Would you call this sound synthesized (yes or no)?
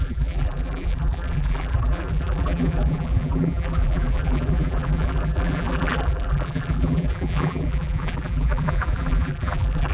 yes